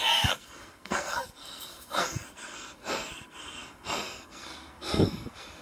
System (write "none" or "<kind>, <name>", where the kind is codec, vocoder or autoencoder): codec, SNAC